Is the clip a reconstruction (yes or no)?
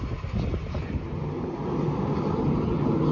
no